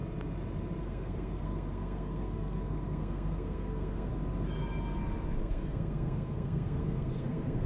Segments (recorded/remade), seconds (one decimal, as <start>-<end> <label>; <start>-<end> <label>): 0.0-0.8 recorded; 0.8-4.1 remade; 4.1-5.4 recorded; 5.4-7.7 remade